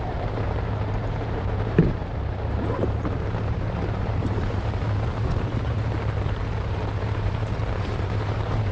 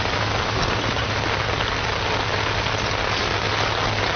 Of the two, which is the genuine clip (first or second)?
second